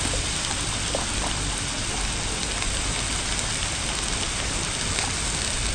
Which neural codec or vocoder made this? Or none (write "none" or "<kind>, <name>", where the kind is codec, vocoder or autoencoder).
none